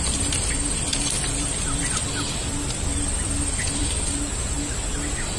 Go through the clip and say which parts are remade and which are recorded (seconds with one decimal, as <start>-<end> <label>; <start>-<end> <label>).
0.0-5.4 recorded